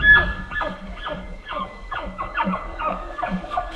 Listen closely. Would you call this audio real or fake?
fake